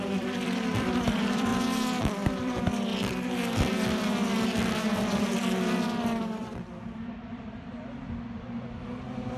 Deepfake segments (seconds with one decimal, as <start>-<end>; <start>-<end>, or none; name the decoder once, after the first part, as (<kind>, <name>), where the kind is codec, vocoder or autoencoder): 0.0-1.5 (vocoder, BigVGAN v2); 2.0-2.9; 5.2-9.4